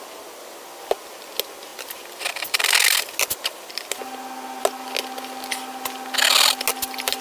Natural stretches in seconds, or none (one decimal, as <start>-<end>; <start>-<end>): 0.0-7.2